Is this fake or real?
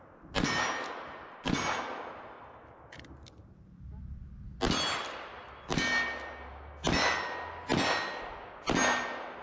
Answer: real